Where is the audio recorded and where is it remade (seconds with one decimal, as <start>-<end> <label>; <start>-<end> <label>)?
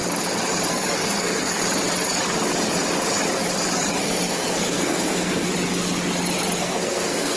0.0-0.7 recorded; 0.7-1.6 remade; 1.6-3.9 recorded; 3.9-5.5 remade; 5.5-6.6 recorded; 6.6-7.4 remade